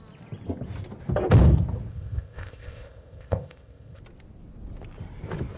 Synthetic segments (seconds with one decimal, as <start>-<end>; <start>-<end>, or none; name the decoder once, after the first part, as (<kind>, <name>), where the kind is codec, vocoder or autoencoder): 1.9-4.0 (codec, ZipCodec)

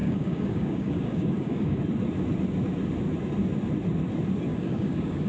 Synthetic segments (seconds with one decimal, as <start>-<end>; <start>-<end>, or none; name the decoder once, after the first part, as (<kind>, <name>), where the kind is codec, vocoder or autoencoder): 0.0-1.8 (codec, DAC); 4.5-5.3

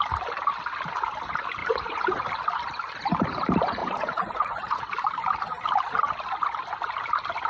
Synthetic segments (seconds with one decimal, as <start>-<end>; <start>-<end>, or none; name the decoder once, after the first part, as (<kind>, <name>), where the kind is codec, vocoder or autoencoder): 1.6-2.2 (vocoder, Vocos); 3.8-4.8

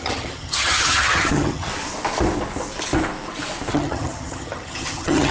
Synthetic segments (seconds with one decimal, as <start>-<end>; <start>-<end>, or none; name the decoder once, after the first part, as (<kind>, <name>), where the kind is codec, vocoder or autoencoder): 0.0-1.7 (vocoder, HiFi-GAN); 3.7-5.3

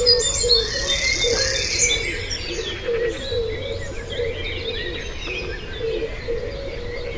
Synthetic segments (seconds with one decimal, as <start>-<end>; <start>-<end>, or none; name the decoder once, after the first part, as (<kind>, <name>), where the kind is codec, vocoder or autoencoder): none

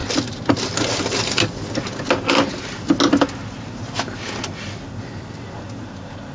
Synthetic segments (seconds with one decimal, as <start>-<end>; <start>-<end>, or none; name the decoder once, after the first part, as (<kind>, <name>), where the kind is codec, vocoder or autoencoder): none